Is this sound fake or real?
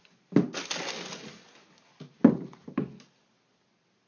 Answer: real